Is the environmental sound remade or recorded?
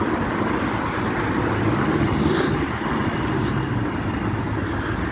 recorded